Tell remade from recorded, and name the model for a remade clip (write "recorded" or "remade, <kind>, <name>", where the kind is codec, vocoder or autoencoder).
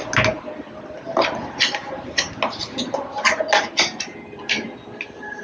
recorded